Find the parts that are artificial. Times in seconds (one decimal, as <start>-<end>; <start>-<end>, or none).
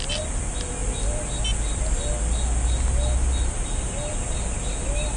none